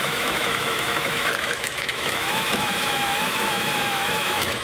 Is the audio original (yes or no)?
no